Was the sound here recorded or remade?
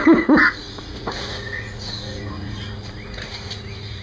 remade